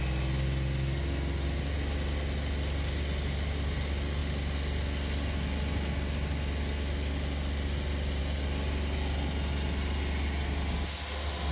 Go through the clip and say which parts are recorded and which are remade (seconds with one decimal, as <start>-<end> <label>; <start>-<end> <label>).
0.0-11.5 recorded